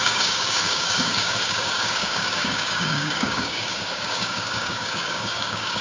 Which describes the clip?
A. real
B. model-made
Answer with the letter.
B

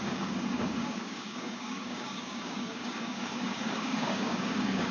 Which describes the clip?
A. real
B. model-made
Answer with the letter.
B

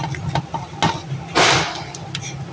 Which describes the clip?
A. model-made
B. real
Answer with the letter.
B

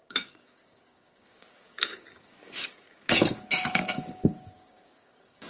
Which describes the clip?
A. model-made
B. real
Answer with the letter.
A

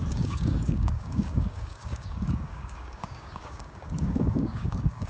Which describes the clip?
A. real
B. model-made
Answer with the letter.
B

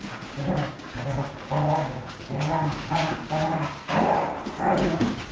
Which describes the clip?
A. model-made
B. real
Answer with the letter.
A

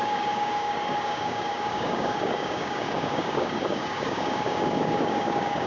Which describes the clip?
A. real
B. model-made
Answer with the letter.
B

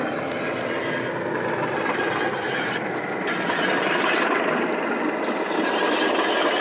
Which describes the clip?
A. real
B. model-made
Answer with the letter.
A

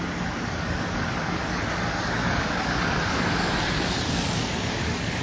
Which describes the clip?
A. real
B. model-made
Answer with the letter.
B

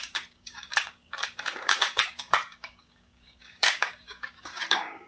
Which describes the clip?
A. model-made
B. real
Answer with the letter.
A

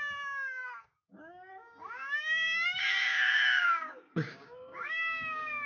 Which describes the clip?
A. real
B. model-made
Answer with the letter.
B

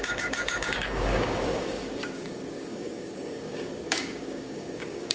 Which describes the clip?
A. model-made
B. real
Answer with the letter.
A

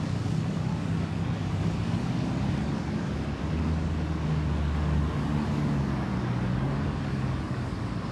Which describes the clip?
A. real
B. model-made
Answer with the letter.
B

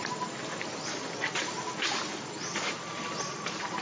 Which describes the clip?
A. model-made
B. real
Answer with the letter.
B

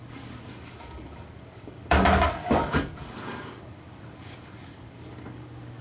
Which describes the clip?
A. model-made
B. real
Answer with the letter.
A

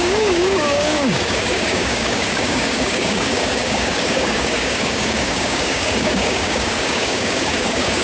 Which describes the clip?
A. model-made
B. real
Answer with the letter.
A